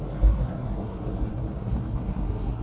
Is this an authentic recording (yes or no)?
no